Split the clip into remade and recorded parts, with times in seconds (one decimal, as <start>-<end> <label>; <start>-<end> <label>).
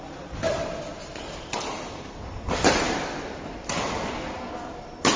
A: 0.0-5.2 recorded